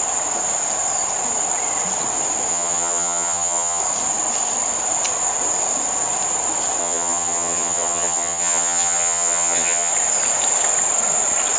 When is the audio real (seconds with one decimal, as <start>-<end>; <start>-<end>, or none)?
0.0-2.5; 3.8-6.8; 9.9-11.6